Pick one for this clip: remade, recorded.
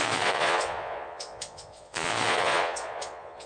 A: remade